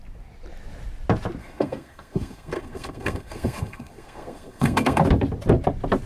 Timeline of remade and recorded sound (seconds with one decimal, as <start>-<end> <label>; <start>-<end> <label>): 0.0-1.4 recorded; 1.4-5.0 remade; 5.0-6.1 recorded